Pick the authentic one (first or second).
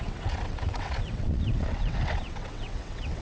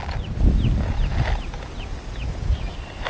second